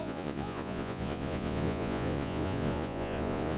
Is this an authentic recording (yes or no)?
no